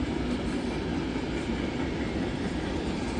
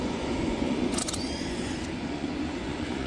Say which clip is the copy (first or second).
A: second